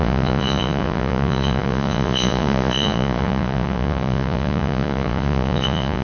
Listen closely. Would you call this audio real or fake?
fake